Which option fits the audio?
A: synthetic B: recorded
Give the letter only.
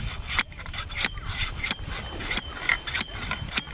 A